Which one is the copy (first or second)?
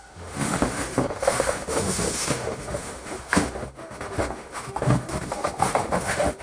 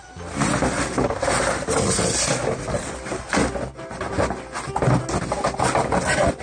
first